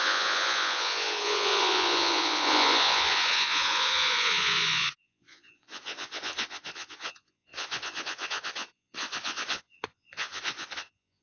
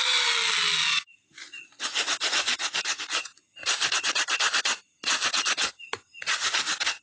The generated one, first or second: first